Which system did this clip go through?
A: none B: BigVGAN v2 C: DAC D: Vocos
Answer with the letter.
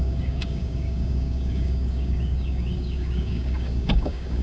C